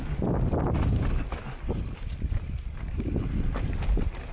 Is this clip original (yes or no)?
yes